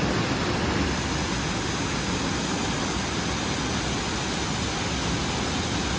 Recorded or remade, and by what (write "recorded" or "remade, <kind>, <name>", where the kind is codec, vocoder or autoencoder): recorded